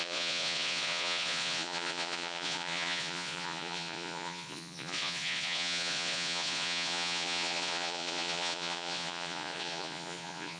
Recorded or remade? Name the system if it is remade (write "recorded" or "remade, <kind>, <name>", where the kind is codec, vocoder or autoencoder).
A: remade, vocoder, Vocos